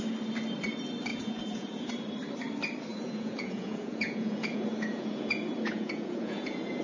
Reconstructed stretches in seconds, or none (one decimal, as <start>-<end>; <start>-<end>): 1.1-1.9; 2.9-6.8